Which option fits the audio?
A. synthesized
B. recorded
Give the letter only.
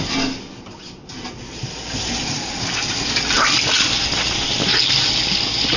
B